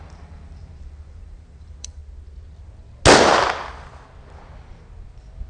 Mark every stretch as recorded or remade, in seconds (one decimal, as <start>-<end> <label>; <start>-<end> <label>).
0.0-2.0 remade; 2.0-5.5 recorded